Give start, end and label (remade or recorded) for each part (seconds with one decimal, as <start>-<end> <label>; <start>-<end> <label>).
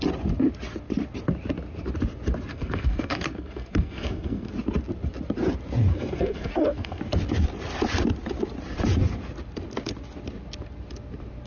0.0-2.5 recorded; 2.5-4.5 remade; 4.5-5.9 recorded; 5.9-7.0 remade; 7.0-11.5 recorded